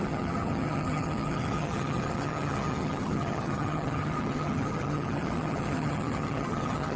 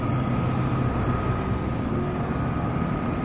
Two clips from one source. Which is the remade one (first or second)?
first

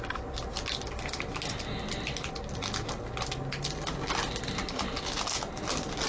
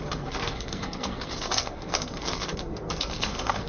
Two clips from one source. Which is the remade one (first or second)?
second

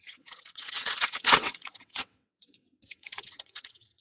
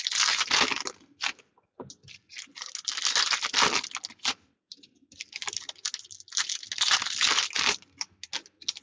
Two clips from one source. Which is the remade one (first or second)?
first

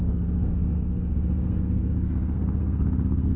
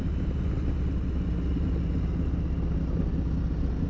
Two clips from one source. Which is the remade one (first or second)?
first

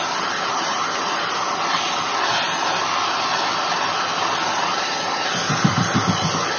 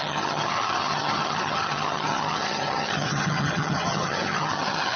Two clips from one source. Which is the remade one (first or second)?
second